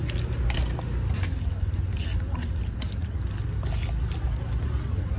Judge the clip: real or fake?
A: real